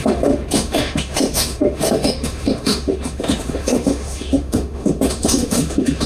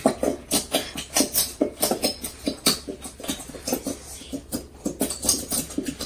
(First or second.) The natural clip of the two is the second